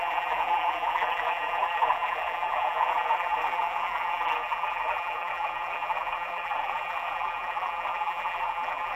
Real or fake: fake